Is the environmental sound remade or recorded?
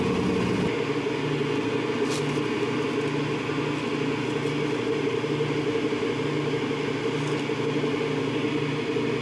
recorded